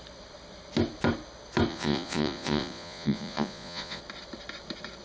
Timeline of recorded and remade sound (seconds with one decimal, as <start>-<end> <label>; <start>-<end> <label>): 0.0-1.7 recorded; 1.7-4.0 remade; 4.0-5.0 recorded